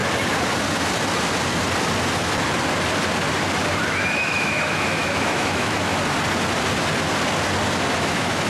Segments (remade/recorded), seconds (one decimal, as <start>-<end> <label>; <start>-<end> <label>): 0.0-3.9 recorded; 3.9-5.9 remade; 5.9-8.0 recorded; 8.0-8.5 remade